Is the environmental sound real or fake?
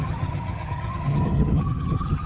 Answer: fake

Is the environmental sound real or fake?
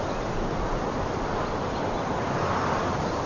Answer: real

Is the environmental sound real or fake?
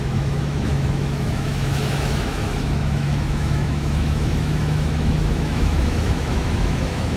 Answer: fake